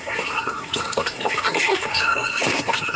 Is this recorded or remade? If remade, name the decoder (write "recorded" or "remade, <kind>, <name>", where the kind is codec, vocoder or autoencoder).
remade, codec, SNAC